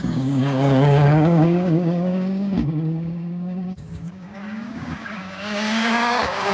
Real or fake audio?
fake